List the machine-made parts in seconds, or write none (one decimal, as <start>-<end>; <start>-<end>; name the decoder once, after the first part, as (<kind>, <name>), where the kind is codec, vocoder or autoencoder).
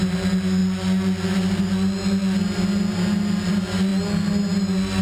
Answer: none